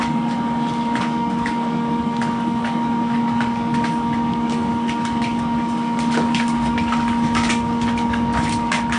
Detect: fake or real fake